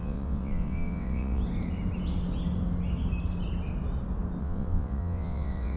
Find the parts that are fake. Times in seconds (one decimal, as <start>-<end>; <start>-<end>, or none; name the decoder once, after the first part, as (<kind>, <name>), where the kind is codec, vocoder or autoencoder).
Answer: 0.0-1.4 (vocoder, WaveNeXt); 4.4-5.8